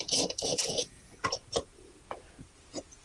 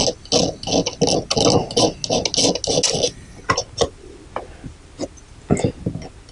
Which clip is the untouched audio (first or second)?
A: second